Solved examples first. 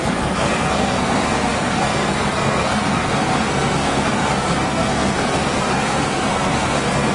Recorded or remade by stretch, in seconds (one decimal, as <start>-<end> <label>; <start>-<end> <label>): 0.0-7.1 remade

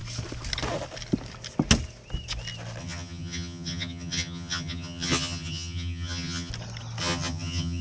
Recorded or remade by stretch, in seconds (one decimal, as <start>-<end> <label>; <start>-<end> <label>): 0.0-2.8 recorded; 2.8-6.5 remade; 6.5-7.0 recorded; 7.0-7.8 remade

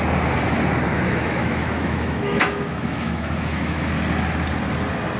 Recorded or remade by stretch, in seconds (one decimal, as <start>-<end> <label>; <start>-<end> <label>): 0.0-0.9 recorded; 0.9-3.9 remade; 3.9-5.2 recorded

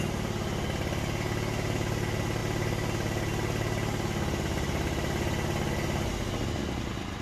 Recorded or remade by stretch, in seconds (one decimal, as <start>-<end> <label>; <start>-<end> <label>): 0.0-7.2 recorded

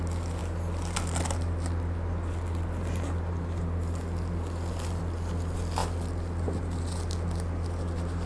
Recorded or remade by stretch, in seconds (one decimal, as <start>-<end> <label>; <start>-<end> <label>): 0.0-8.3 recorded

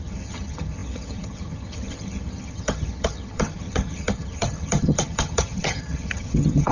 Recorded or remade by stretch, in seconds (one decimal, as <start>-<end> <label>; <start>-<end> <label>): 0.0-6.7 remade